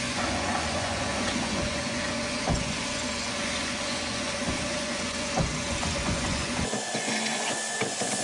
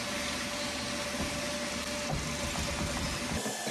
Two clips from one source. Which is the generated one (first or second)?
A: first